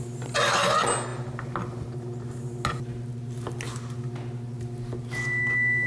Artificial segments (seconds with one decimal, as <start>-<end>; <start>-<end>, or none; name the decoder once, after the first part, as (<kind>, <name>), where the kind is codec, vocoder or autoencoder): none